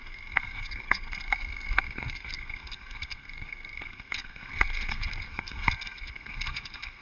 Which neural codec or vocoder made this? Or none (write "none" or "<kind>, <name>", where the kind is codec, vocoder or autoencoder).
codec, SNAC